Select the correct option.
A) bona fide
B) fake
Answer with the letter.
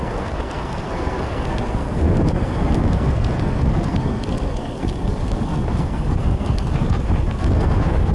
B